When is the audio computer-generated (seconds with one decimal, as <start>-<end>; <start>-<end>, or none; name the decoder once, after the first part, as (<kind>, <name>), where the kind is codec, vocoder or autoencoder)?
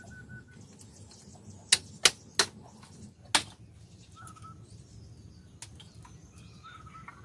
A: none